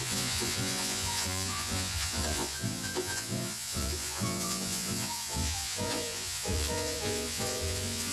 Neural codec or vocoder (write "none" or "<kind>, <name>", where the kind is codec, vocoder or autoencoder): vocoder, Vocos